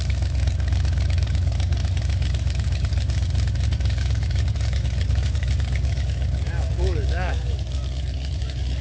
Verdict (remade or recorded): remade